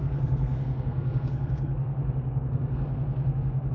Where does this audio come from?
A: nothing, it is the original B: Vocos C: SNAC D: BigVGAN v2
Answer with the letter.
C